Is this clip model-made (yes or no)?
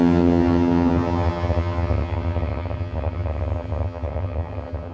yes